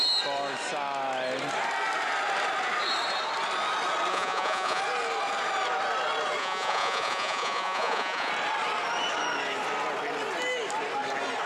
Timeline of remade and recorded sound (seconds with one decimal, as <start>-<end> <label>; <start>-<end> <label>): 0.0-4.1 recorded; 4.1-4.8 remade; 4.8-6.4 recorded; 6.4-8.3 remade; 8.3-11.5 recorded

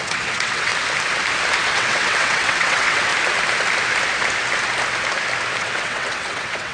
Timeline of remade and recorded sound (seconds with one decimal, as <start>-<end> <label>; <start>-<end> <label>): 0.0-0.7 remade; 0.7-1.7 recorded; 1.7-3.1 remade; 3.1-5.6 recorded; 5.6-6.7 remade

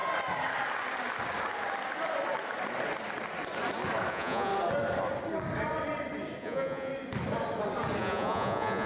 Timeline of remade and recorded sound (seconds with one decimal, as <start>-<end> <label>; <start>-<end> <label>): 0.0-4.1 recorded; 4.1-4.5 remade; 4.5-6.4 recorded; 6.4-6.9 remade; 6.9-8.0 recorded; 8.0-8.9 remade

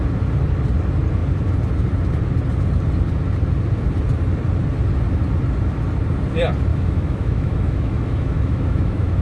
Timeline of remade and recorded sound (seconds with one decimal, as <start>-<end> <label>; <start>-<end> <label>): 0.0-6.7 recorded; 6.7-9.2 remade

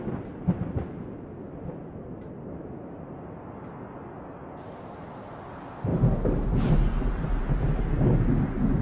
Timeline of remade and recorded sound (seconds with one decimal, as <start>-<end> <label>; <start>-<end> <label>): 0.0-8.8 recorded